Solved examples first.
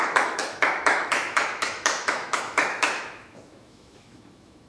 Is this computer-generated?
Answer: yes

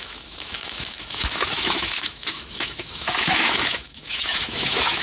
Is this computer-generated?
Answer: yes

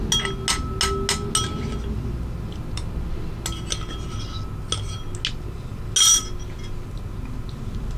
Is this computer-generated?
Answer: no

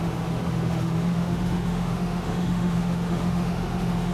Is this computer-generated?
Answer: yes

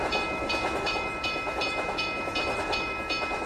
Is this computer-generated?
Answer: yes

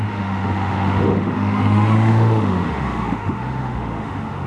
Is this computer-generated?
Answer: yes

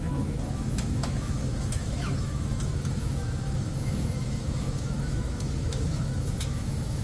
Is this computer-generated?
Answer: yes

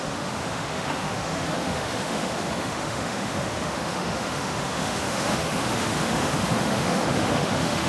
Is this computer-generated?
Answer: yes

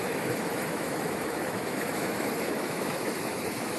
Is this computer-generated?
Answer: yes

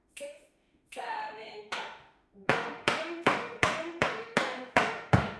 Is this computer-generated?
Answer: yes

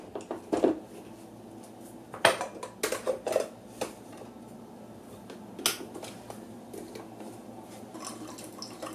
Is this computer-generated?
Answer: no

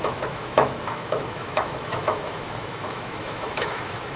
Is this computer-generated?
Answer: yes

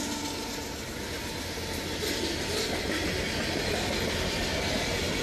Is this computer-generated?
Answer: no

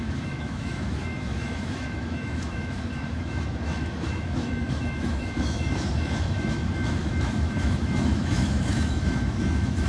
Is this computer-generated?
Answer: yes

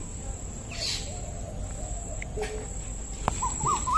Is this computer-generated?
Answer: no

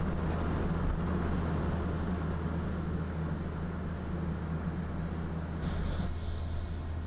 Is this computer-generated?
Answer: no